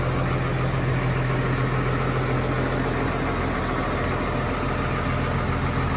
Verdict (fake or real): real